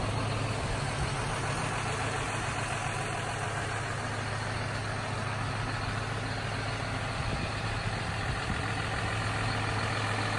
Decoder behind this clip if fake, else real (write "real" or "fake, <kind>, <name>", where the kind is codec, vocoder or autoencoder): real